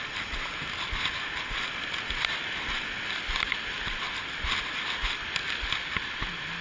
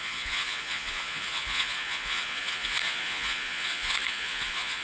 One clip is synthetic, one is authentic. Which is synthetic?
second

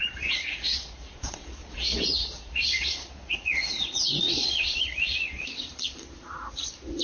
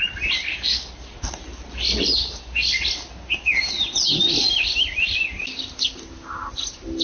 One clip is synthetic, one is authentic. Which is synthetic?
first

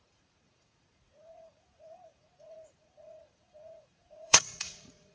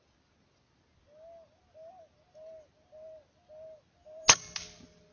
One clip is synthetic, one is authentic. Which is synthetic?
first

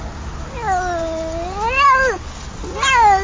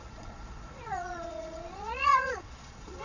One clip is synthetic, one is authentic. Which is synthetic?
second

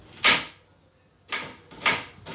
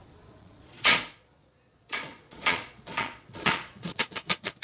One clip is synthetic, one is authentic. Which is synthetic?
second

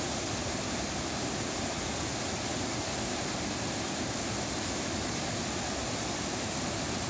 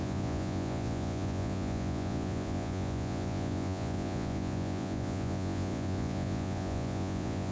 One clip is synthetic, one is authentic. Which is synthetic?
second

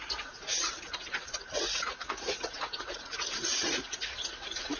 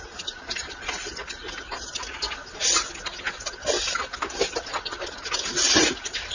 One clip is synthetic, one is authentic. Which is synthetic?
first